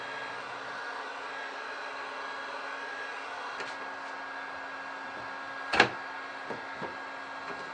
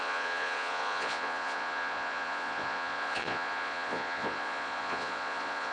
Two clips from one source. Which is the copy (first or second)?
second